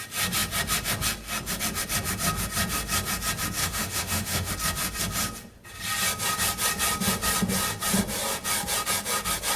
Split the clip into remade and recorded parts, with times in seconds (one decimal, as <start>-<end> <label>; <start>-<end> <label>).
0.0-3.6 recorded; 3.6-4.5 remade; 4.5-9.6 recorded